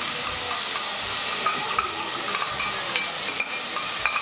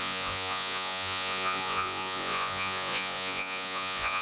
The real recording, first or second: first